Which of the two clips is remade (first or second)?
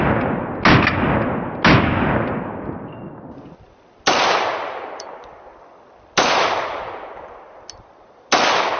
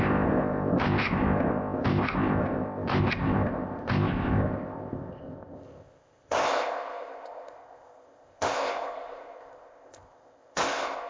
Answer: second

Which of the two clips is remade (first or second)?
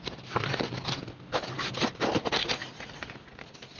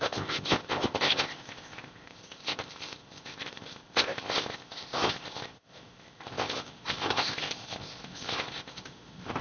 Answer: second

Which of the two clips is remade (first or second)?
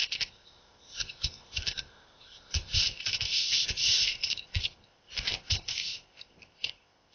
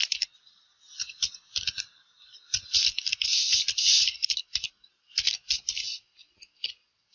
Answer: first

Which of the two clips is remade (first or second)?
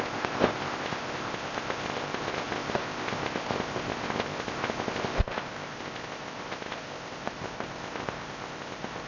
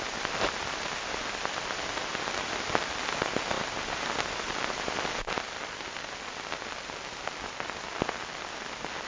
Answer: first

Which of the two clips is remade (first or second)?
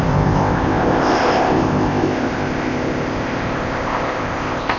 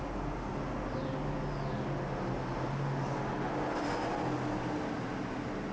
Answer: first